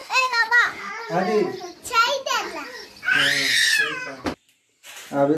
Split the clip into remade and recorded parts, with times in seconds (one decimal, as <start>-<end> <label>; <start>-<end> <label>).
0.0-0.9 remade; 0.9-5.4 recorded